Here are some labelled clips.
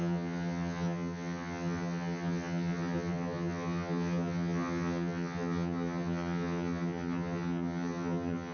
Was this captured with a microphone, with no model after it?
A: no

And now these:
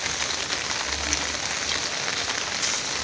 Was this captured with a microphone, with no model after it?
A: yes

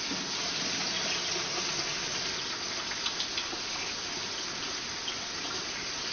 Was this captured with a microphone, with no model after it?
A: yes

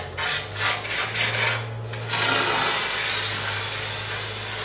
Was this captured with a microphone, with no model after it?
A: yes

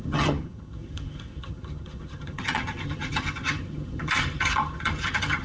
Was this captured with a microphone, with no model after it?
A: no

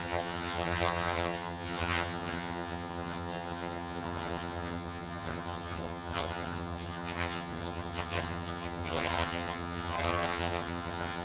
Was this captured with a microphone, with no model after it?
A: no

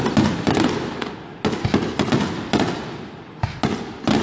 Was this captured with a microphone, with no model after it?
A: yes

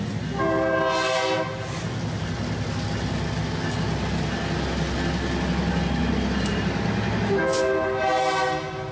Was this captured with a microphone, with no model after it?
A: yes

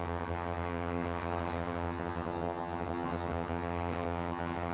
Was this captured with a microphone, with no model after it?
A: no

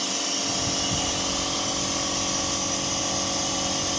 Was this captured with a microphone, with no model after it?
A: yes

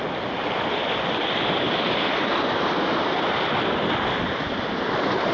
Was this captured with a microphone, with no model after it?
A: yes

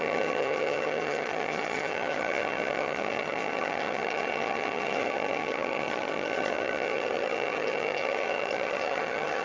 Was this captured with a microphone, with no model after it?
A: no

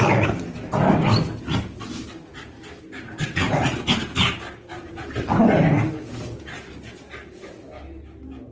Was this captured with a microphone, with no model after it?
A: yes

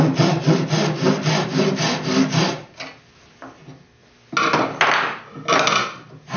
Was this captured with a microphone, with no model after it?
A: yes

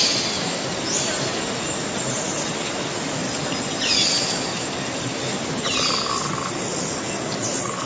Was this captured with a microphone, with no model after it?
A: yes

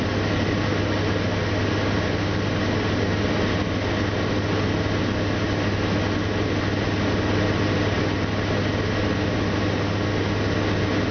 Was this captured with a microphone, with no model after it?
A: yes